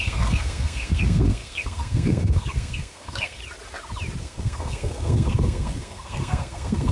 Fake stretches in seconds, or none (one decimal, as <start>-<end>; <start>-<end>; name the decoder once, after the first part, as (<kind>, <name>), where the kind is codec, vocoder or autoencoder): 0.0-3.4 (codec, SNAC); 4.2-6.9